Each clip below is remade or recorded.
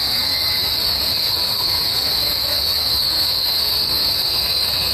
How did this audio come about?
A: remade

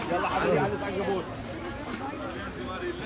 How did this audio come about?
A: recorded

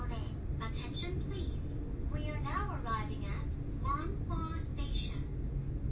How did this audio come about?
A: recorded